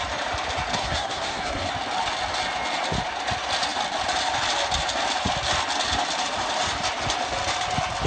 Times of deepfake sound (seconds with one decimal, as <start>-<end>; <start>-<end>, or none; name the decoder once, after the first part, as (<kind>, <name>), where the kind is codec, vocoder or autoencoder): 0.7-1.7 (codec, SNAC)